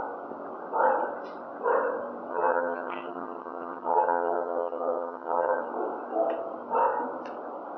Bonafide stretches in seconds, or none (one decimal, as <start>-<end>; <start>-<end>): 0.0-2.3; 5.6-7.8